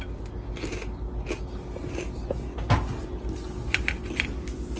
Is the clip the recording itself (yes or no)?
yes